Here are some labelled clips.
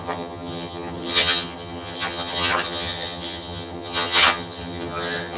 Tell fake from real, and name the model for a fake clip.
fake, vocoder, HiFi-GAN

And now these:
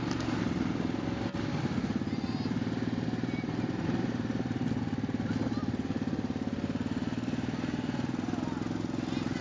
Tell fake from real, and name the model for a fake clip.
real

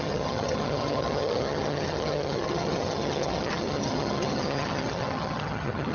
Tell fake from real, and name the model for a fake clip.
fake, vocoder, HiFi-GAN